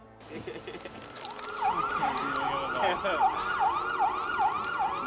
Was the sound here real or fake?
real